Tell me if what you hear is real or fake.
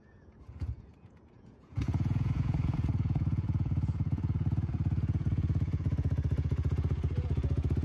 fake